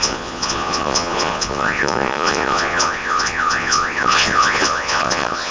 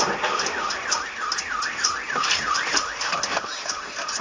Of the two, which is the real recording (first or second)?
second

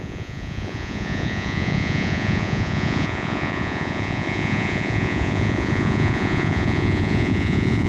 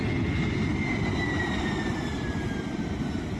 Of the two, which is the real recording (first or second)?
second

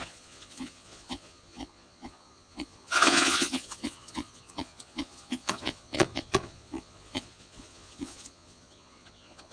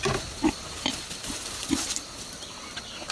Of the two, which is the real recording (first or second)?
second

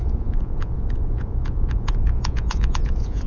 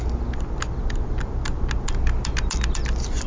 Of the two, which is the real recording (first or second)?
second